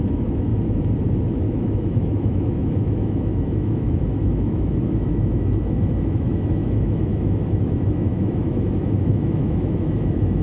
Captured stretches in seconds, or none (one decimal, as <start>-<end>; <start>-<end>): 0.5-1.2